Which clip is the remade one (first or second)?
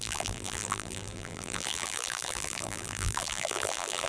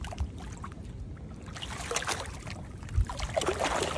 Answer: first